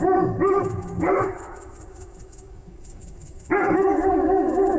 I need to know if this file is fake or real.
fake